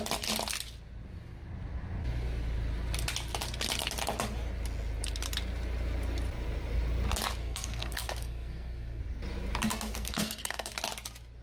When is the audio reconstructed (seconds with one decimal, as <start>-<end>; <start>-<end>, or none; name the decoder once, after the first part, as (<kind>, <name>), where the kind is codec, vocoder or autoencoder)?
7.4-9.0 (codec, SNAC); 9.7-10.7